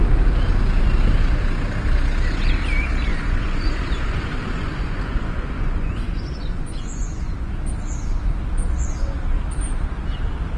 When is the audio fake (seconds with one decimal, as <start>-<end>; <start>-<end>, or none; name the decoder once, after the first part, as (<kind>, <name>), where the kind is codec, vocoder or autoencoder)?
3.1-7.5 (vocoder, Vocos)